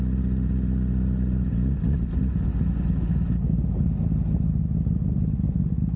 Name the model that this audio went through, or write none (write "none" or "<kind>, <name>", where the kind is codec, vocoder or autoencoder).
none